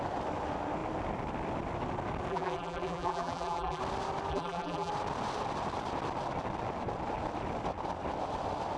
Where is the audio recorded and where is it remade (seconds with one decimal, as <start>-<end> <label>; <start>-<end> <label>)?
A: 0.0-2.3 recorded; 2.3-3.8 remade; 3.8-4.3 recorded; 4.3-4.9 remade; 4.9-8.8 recorded